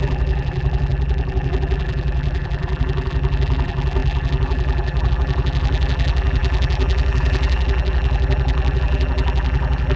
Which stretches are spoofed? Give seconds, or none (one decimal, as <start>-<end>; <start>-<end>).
0.0-10.0